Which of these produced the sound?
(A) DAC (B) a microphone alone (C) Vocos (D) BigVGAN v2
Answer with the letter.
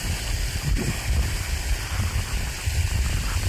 B